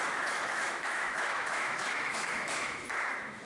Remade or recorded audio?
remade